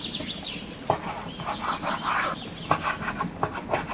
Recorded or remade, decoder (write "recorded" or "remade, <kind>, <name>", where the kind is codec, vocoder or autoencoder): recorded